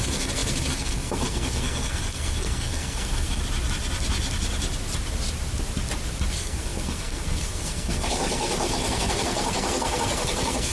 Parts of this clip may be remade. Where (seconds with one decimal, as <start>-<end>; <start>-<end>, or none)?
0.0-3.4; 6.3-10.7